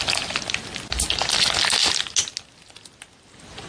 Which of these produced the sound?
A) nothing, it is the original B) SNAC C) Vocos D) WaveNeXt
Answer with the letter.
A